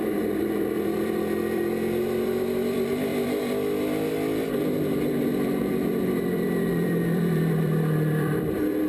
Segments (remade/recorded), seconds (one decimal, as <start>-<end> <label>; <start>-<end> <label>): 0.0-8.9 remade